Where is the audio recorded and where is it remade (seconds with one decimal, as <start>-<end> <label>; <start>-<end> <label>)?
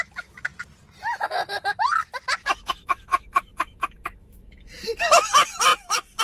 0.0-0.5 remade; 0.5-2.6 recorded; 2.6-6.2 remade